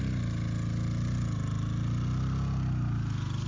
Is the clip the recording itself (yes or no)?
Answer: yes